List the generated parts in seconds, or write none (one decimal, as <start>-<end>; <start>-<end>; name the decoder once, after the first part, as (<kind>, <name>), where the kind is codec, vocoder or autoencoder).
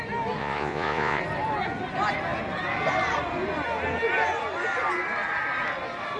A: 0.4-1.2 (vocoder, Vocos)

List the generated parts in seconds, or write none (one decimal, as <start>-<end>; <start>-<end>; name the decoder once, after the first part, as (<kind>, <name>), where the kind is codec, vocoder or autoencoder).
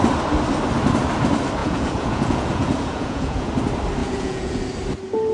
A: 1.6-3.5 (vocoder, Vocos); 4.0-4.6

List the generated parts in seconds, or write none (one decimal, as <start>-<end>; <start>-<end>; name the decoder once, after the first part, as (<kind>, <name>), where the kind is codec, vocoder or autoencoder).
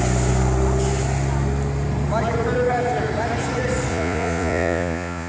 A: 3.9-5.3 (vocoder, Vocos)